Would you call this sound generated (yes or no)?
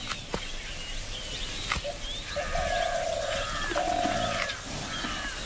no